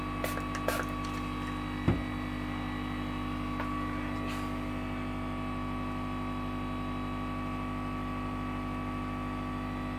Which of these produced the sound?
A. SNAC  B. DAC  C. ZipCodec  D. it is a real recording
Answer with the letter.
D